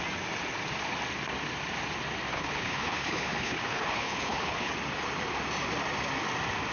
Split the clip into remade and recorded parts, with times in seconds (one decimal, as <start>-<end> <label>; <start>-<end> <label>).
0.0-2.3 recorded; 2.3-4.7 remade; 4.7-6.7 recorded